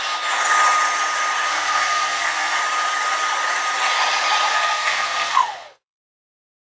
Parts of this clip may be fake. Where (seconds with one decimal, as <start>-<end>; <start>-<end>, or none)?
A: 1.5-2.6; 4.5-6.8